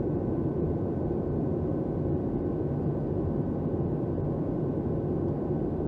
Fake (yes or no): no